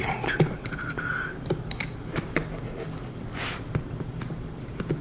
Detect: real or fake real